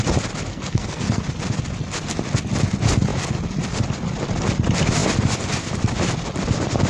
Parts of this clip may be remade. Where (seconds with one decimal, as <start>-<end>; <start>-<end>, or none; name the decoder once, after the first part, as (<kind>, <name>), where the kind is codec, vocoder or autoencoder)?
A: 0.5-1.2 (codec, SNAC)